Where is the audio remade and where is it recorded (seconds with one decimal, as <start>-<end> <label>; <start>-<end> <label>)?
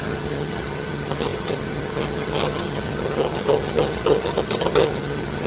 0.0-5.5 remade